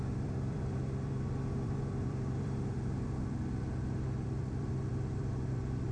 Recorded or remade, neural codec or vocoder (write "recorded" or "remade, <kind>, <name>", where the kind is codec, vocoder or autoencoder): remade, vocoder, BigVGAN v2